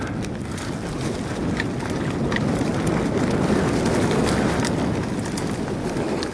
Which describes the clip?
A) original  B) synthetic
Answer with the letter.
A